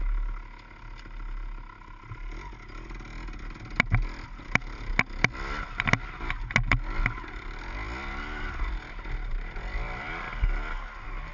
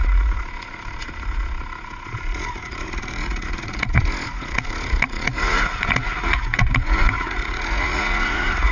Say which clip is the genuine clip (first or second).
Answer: first